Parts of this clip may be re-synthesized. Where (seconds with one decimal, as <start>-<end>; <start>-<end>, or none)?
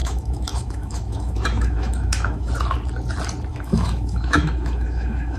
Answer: 0.0-2.5; 3.5-5.4